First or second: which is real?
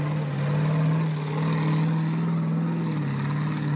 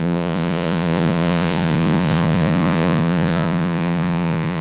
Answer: first